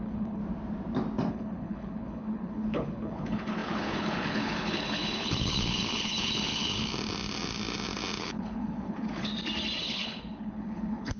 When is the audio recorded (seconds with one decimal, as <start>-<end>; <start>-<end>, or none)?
0.4-1.3; 6.9-8.2; 9.3-9.8